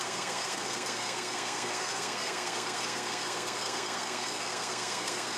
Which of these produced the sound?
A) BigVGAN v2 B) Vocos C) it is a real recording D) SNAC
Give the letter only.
D